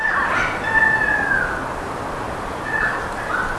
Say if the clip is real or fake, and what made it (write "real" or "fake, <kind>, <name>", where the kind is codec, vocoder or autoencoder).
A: real